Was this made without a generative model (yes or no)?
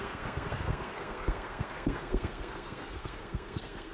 no